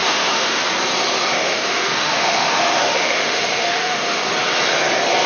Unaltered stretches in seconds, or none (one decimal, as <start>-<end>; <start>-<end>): 0.6-1.4; 4.2-5.3